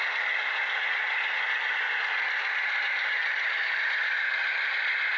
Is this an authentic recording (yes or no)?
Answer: yes